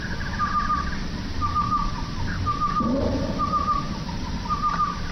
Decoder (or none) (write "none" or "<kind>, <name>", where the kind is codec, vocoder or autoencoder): vocoder, BigVGAN v2